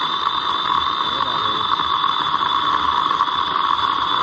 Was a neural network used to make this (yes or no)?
no